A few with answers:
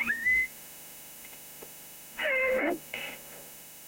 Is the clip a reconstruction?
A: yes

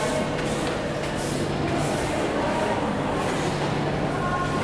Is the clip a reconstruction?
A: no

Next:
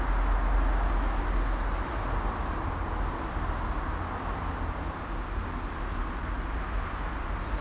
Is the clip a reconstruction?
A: no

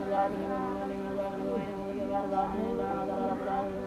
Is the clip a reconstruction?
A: yes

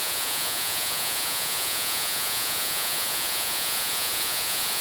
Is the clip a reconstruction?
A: yes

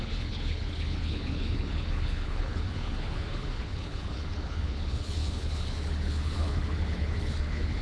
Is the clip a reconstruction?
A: yes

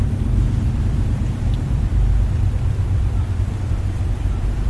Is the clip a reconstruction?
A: yes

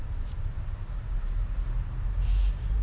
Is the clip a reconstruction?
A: yes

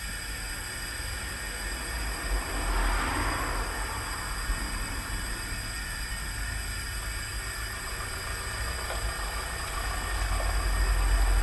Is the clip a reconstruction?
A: no